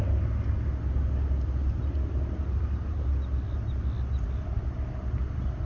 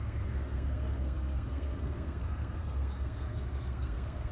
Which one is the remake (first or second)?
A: second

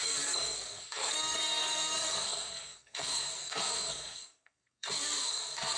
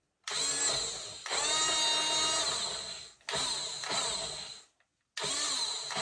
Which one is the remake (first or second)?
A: first